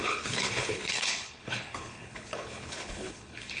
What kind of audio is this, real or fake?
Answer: fake